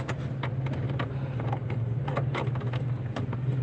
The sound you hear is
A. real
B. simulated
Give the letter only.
A